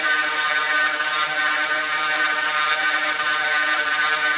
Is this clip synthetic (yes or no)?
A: yes